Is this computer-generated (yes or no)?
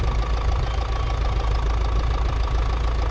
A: no